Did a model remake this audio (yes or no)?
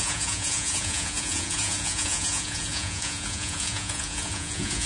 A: yes